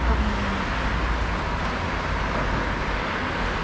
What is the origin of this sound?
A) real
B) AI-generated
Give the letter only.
A